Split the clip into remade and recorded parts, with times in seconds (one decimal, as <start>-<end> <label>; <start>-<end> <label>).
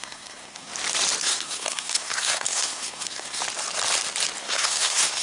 0.0-0.7 remade; 0.7-1.2 recorded; 1.2-3.4 remade; 3.4-4.4 recorded; 4.4-5.2 remade